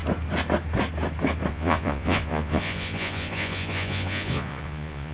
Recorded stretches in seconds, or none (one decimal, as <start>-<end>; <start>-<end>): 0.0-1.5